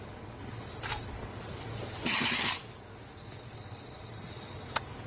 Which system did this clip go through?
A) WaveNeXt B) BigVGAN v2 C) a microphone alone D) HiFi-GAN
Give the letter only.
C